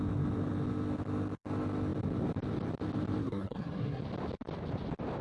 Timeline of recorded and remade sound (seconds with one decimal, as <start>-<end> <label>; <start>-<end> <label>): 0.0-3.2 recorded; 3.2-4.0 remade; 4.0-5.2 recorded